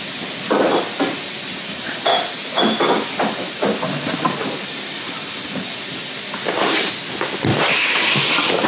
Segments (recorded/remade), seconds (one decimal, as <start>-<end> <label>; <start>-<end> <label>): 0.0-7.5 recorded; 7.5-8.2 remade; 8.2-8.7 recorded